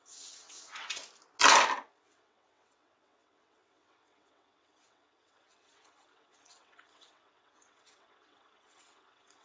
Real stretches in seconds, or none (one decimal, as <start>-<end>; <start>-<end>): 1.0-2.0